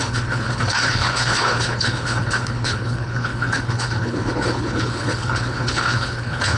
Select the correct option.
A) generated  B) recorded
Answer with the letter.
A